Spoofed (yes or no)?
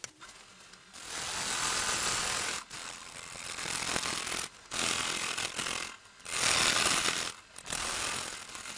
no